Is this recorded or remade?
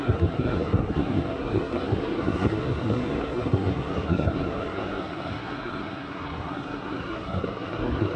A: remade